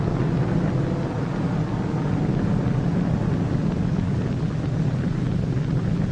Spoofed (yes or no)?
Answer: no